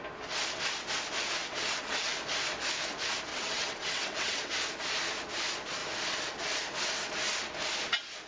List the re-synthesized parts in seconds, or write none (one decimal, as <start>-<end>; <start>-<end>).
1.4-2.2; 3.3-4.5